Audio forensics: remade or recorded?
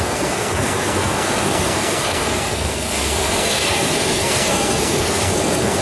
remade